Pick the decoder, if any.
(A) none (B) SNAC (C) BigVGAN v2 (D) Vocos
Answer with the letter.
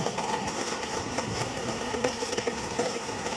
B